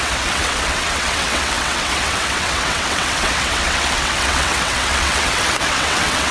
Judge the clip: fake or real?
fake